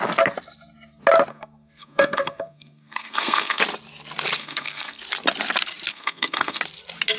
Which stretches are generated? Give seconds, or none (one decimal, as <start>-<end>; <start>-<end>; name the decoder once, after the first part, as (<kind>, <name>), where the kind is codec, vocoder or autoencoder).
1.3-3.6 (codec, SNAC); 4.4-5.0; 5.9-6.6